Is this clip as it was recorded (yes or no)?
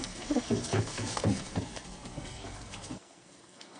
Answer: no